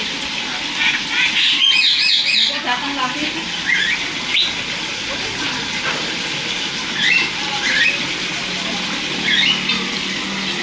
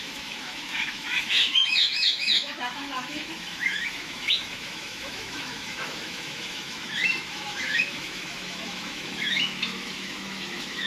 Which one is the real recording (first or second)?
first